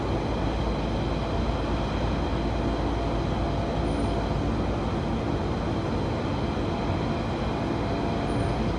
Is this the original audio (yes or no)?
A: yes